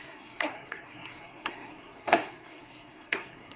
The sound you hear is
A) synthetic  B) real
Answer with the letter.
A